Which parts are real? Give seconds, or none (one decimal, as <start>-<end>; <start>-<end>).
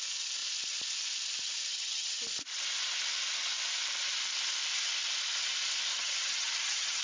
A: 0.0-1.7; 2.2-5.9